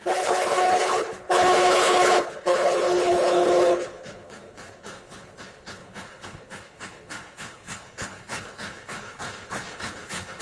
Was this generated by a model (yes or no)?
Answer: yes